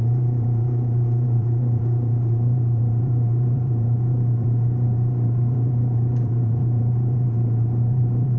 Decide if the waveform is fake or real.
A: fake